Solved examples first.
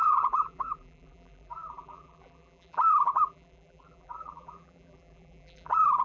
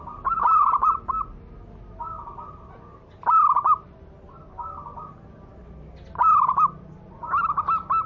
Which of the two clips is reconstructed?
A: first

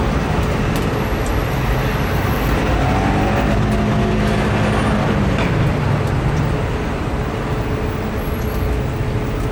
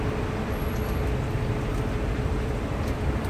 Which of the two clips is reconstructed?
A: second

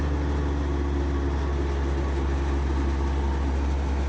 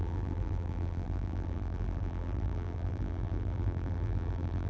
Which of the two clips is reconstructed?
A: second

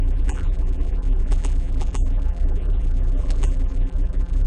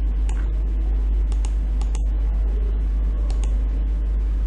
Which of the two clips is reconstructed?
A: first